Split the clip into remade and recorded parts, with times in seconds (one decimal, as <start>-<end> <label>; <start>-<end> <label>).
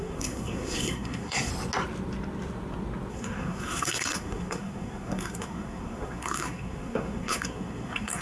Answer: 0.0-1.5 remade; 1.5-3.1 recorded; 3.1-8.2 remade